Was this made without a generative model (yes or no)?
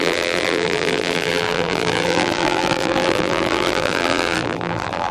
no